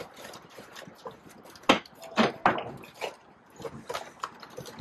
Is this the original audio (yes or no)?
yes